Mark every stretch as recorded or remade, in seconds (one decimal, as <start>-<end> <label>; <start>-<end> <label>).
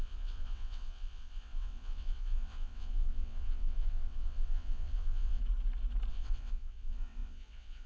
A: 0.0-5.4 remade; 5.4-6.1 recorded; 6.1-7.9 remade